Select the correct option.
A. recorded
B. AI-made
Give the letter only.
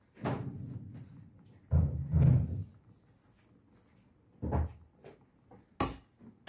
A